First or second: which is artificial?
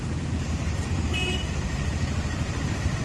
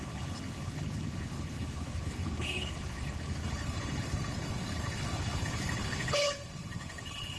second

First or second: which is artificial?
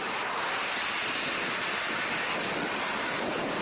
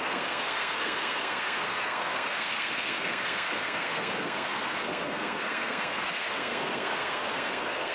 second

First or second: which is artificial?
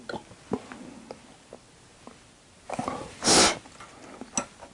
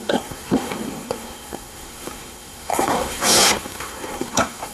second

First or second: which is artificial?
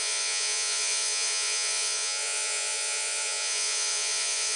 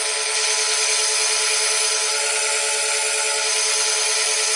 first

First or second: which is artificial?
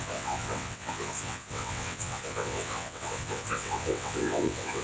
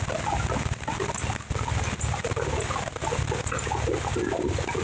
first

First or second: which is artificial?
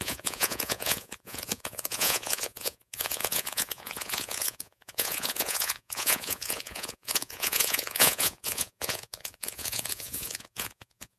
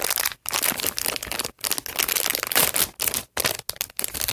first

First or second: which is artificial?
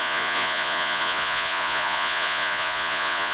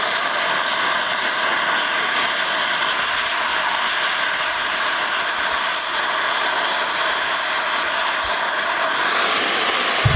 first